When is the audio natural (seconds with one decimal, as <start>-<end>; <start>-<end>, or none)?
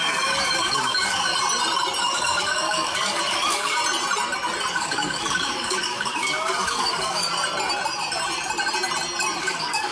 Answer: 1.3-2.0; 3.8-4.7; 7.3-9.4